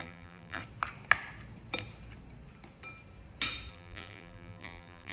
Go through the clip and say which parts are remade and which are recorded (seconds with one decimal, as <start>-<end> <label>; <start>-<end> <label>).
0.0-0.6 remade; 0.6-3.7 recorded; 3.7-5.1 remade